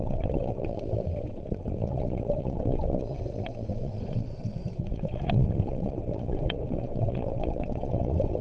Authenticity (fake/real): fake